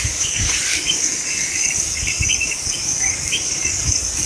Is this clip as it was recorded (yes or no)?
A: no